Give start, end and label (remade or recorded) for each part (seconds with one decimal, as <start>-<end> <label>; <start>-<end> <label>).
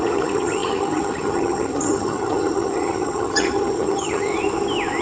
0.0-4.3 remade; 4.3-5.0 recorded